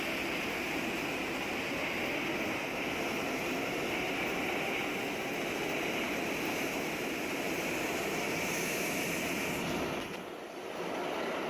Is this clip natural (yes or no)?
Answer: yes